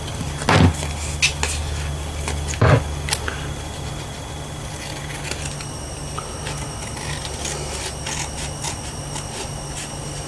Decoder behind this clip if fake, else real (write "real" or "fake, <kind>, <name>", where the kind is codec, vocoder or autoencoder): real